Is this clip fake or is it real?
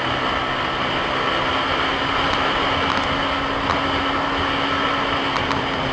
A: real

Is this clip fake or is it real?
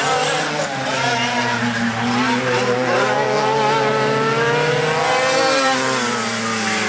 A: real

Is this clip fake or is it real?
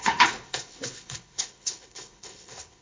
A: fake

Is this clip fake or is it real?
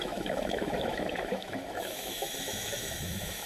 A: fake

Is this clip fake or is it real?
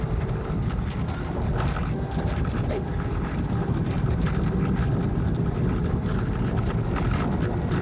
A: real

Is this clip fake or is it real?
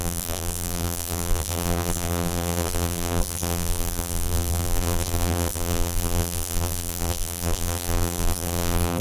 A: fake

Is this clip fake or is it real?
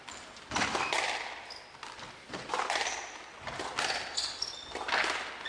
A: real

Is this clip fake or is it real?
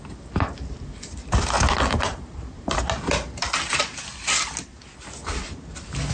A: real